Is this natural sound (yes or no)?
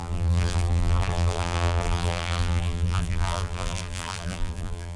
no